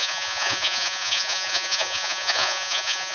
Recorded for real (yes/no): no